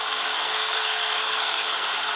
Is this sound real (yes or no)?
no